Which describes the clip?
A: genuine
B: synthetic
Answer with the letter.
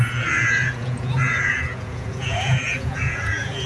B